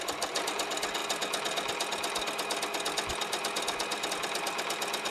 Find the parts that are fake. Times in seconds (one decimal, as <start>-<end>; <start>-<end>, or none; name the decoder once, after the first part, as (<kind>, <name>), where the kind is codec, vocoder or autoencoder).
none